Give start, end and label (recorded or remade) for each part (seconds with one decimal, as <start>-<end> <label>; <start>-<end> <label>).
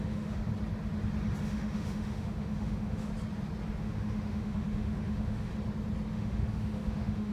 0.0-0.5 remade; 0.5-1.4 recorded; 1.4-3.1 remade; 3.1-3.8 recorded; 3.8-5.5 remade; 5.5-6.1 recorded; 6.1-7.3 remade